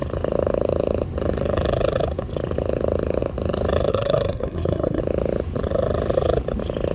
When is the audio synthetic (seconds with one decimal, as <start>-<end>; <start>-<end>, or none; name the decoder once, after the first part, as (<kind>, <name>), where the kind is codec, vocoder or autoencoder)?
3.9-5.0 (codec, SNAC)